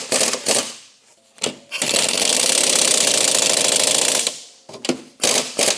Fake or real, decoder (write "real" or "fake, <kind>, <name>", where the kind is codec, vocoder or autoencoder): real